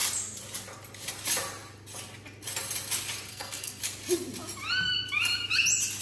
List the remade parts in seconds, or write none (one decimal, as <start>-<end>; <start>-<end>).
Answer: 3.3-3.8